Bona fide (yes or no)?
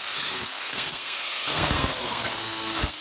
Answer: no